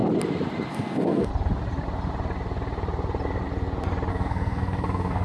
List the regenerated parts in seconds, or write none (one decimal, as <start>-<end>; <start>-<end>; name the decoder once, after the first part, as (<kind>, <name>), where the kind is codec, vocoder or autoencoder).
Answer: 0.7-1.3 (codec, SNAC); 4.1-5.2